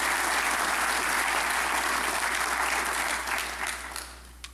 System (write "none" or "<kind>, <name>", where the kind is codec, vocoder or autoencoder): none